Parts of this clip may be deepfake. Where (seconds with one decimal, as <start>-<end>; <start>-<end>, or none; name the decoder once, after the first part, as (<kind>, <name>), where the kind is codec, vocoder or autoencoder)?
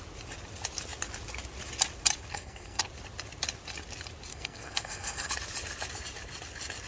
2.3-2.8 (codec, SNAC); 4.3-5.3